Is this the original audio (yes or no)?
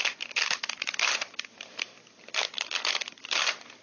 yes